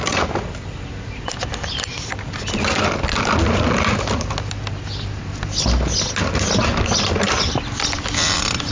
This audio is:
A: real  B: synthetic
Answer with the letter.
A